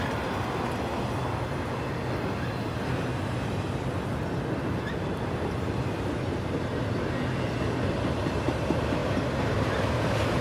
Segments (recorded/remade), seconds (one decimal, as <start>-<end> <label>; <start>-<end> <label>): 0.0-10.4 recorded